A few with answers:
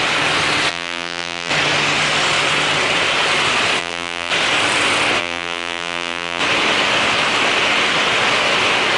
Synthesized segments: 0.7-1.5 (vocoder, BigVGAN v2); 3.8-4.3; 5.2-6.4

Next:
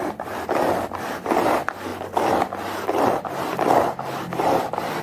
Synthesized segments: none